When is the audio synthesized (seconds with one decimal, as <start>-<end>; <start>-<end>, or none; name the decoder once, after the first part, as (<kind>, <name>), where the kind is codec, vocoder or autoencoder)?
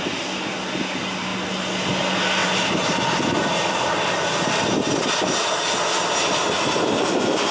none